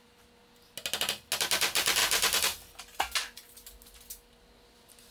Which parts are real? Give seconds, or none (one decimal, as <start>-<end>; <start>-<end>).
0.0-5.1